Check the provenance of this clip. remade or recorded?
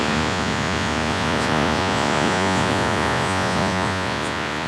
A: remade